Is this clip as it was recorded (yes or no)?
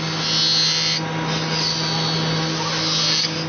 yes